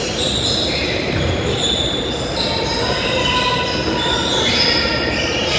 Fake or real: real